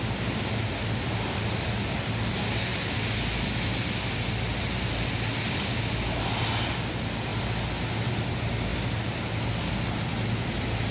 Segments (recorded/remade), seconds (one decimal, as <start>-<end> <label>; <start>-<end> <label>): 0.0-10.9 recorded

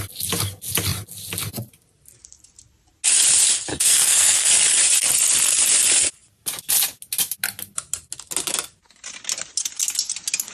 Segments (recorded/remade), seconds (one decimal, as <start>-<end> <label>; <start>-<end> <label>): 0.0-3.7 recorded; 3.7-4.5 remade; 4.5-10.5 recorded

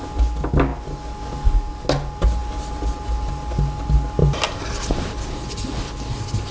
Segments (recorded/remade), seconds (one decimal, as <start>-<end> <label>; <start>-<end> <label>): 0.0-6.5 recorded

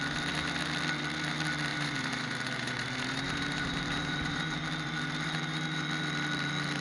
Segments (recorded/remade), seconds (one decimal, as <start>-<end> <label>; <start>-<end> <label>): 0.0-1.7 recorded; 1.7-5.8 remade; 5.8-6.8 recorded